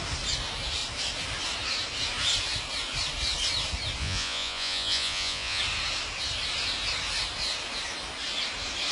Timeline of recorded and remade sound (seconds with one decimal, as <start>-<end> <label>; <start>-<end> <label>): 0.0-4.0 recorded; 4.0-5.6 remade; 5.6-8.9 recorded

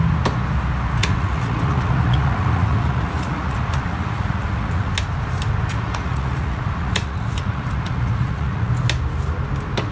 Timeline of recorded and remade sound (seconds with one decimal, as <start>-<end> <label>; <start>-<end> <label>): 0.0-1.0 recorded; 1.0-4.9 remade; 4.9-5.7 recorded; 5.7-8.7 remade; 8.7-9.9 recorded

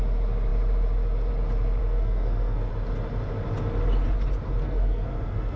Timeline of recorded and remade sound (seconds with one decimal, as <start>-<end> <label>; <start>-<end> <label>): 0.0-1.8 recorded; 1.8-2.7 remade; 2.7-4.6 recorded; 4.6-5.6 remade

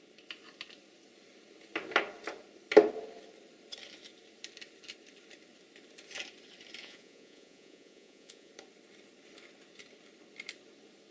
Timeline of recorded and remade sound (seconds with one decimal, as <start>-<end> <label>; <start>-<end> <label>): 0.0-6.8 recorded; 6.8-8.5 remade; 8.5-11.1 recorded

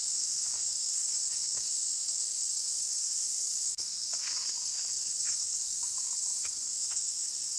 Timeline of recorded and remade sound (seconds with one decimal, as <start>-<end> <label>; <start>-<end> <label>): 0.0-7.6 remade